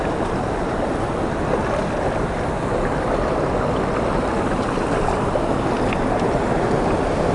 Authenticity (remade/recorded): recorded